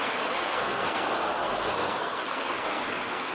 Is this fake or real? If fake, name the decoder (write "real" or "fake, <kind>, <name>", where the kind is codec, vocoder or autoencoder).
fake, codec, SNAC